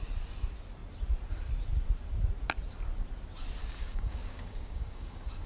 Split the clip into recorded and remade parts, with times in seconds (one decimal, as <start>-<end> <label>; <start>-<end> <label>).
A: 0.0-3.6 recorded; 3.6-5.5 remade